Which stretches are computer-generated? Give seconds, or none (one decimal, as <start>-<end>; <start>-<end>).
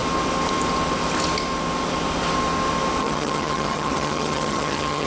3.0-5.1